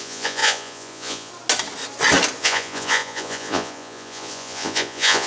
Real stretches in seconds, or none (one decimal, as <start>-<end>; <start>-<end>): 1.3-2.4